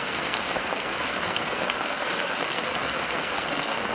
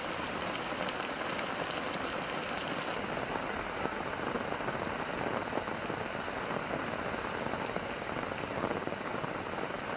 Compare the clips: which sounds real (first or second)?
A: second